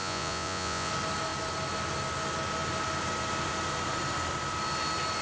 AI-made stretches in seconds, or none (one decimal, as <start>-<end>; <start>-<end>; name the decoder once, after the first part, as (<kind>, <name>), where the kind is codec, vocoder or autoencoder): 0.0-0.9 (vocoder, Vocos)